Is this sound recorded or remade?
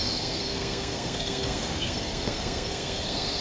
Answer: remade